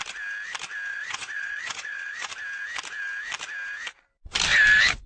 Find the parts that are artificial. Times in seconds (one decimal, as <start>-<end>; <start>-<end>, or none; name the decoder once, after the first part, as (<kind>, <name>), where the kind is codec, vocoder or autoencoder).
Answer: 0.9-2.3 (vocoder, Vocos)